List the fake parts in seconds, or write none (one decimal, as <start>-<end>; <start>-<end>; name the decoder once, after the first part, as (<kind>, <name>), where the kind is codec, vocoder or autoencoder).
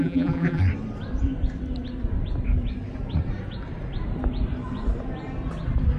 0.0-0.6 (vocoder, BigVGAN v2)